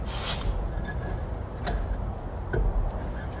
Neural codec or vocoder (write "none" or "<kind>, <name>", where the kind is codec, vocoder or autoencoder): none